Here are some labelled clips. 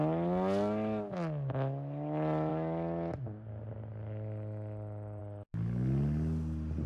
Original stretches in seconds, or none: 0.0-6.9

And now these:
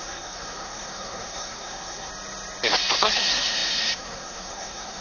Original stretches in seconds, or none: 2.1-3.0

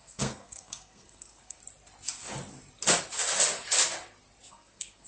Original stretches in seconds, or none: 1.6-4.5

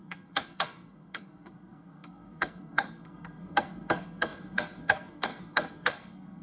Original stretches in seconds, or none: none

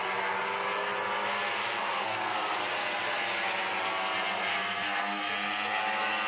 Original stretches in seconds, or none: 0.0-1.8; 2.4-4.5; 5.3-6.3

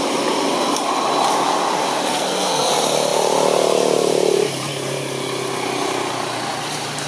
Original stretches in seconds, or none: 0.0-2.1; 2.7-7.1